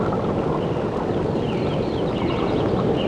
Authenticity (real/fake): real